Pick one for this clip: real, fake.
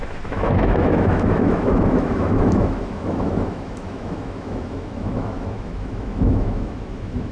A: fake